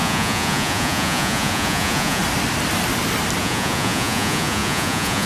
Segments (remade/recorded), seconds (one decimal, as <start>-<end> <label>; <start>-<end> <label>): 0.0-2.2 remade; 2.2-3.4 recorded; 3.4-5.3 remade